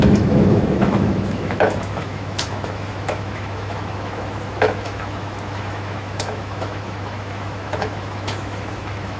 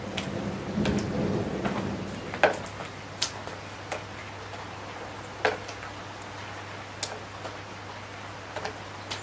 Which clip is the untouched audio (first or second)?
second